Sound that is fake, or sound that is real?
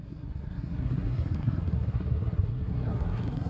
fake